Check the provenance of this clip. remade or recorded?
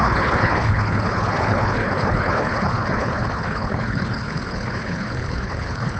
remade